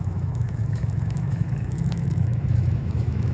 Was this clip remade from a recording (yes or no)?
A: yes